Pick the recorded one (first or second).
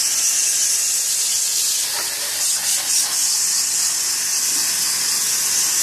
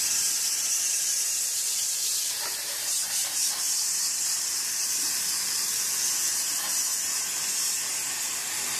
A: first